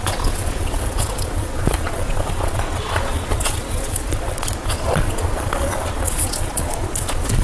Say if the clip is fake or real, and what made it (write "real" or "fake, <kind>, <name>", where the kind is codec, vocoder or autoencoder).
fake, vocoder, Vocos